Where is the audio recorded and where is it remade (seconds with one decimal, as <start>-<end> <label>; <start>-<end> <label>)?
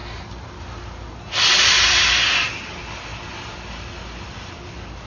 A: 0.0-5.1 recorded